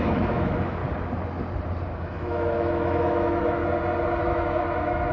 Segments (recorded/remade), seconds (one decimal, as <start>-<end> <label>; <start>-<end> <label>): 0.0-0.8 remade; 0.8-2.0 recorded; 2.0-3.6 remade; 3.6-4.2 recorded; 4.2-5.1 remade